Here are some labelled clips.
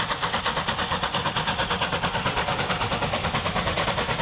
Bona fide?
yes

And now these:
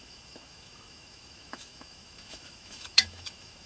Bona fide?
no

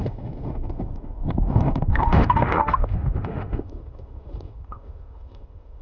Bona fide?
no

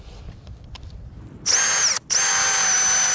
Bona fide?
yes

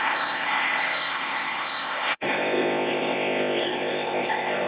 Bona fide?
no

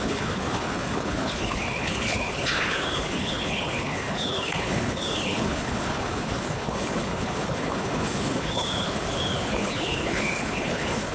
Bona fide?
no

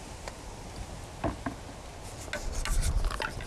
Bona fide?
yes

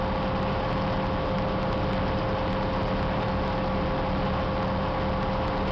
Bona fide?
yes